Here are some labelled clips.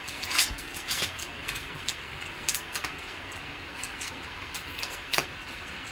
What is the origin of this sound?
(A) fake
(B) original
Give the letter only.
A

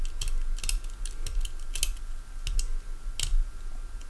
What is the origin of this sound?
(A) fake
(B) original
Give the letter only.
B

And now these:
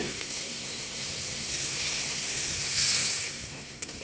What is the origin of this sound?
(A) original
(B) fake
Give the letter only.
B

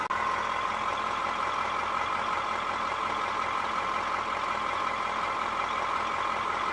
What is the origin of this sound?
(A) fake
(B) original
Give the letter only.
B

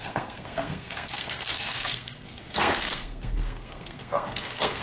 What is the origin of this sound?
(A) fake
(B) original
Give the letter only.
A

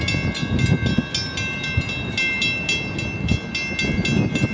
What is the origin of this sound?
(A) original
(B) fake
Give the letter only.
A